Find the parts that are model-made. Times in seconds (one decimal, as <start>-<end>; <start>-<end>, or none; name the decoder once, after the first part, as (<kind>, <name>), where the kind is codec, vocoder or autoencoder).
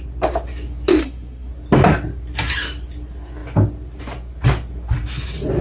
1.0-1.5 (codec, SNAC)